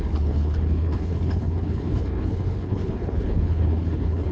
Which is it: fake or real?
fake